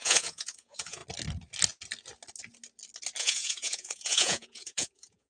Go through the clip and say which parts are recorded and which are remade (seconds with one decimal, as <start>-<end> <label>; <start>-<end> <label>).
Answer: 0.0-1.0 remade; 1.0-3.2 recorded; 3.2-5.3 remade